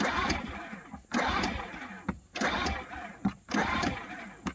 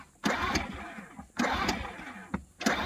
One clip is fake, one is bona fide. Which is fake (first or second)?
first